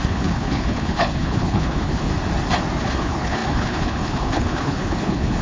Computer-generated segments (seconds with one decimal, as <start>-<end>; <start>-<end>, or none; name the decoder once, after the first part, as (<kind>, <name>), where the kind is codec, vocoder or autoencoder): 0.0-2.1 (codec, HILCodec); 2.8-5.4